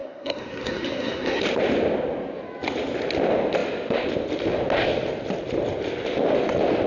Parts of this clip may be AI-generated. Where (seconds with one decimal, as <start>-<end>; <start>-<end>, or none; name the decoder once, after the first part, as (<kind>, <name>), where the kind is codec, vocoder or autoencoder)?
0.0-1.4 (codec, SNAC)